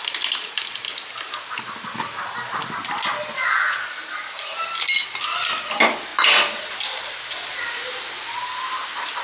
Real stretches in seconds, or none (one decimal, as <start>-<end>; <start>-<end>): 0.0-9.2